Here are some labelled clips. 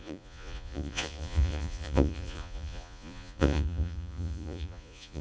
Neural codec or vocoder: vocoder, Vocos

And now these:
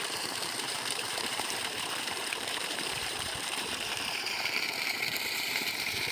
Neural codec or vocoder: vocoder, BigVGAN v2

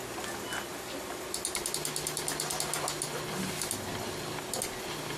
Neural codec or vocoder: none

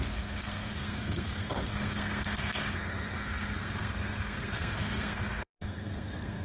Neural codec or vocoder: codec, SNAC